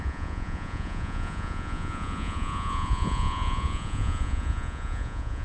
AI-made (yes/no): yes